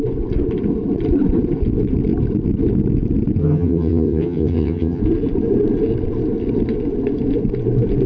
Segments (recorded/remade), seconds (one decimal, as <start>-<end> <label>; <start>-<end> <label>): 0.0-3.4 recorded; 3.4-5.0 remade; 5.0-8.1 recorded